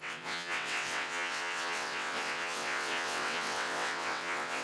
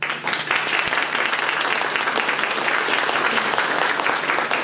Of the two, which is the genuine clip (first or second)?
second